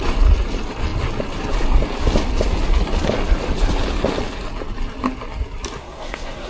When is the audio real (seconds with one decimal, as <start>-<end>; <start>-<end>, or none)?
0.0-5.8